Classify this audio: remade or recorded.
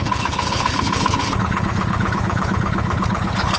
remade